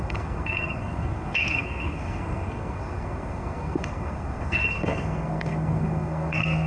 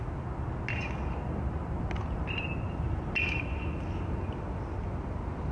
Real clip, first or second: second